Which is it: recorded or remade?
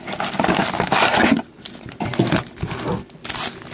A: recorded